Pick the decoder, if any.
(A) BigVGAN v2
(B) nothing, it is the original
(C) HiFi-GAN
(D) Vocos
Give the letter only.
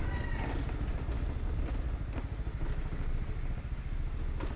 B